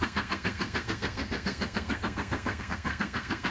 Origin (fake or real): fake